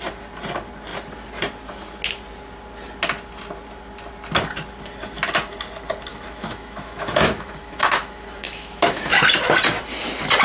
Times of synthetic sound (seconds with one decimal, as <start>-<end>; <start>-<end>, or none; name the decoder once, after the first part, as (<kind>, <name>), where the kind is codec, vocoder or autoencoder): 6.1-9.2 (autoencoder, DAC-VAE)